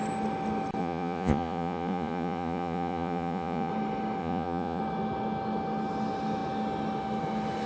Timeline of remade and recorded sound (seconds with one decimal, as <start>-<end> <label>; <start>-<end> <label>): 0.0-0.8 recorded; 0.8-3.7 remade; 3.7-4.2 recorded; 4.2-4.8 remade; 4.8-7.7 recorded